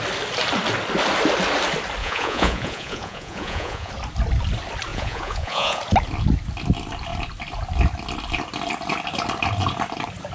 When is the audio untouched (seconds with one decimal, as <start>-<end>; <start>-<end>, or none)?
0.0-2.0; 3.9-4.9; 5.8-10.3

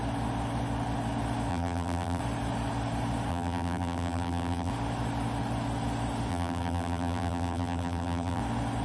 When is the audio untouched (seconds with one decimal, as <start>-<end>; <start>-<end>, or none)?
0.0-1.5; 2.2-3.3; 4.7-6.3; 8.4-8.8

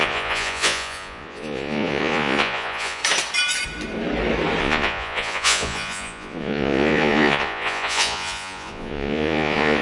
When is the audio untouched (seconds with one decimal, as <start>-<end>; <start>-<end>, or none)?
3.0-4.6

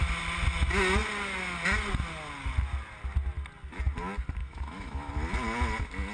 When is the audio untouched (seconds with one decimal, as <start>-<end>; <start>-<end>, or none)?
0.0-4.4; 5.1-6.1

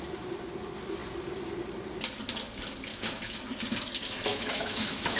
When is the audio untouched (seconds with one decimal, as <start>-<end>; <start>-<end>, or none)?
0.0-2.9; 3.4-4.3